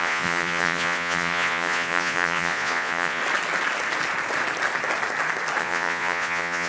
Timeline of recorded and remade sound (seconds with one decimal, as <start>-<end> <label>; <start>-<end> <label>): 0.0-3.2 remade; 3.2-5.6 recorded; 5.6-6.7 remade